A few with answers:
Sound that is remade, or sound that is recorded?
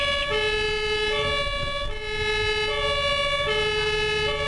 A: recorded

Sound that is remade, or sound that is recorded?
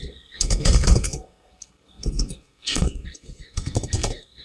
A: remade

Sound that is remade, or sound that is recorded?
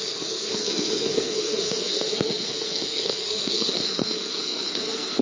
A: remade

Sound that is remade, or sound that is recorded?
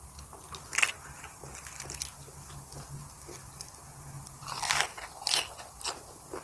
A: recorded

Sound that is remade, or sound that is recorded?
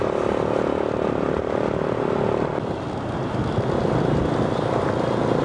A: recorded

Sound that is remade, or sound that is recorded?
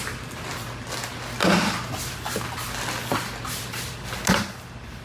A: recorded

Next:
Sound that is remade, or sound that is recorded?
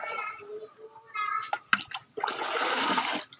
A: recorded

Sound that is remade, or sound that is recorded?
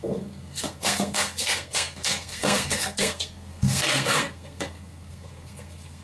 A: remade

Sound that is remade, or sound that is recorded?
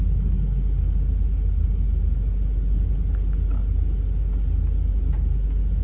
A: recorded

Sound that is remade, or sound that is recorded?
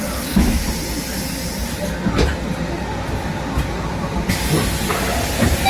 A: recorded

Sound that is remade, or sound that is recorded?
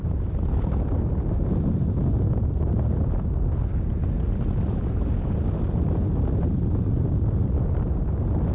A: recorded